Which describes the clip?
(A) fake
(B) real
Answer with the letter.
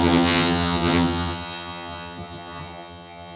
A